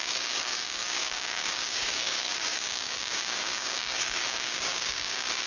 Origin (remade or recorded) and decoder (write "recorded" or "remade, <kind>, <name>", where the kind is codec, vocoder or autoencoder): remade, codec, DAC